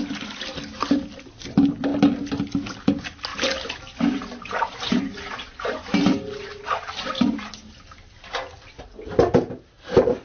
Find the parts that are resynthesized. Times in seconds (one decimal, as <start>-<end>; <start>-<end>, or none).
3.3-7.5